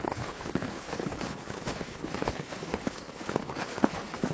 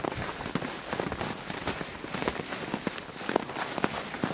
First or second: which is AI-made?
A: first